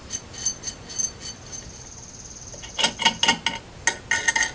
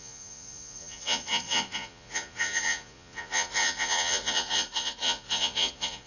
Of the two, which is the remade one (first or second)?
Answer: second